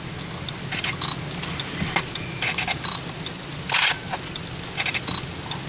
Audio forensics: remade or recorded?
recorded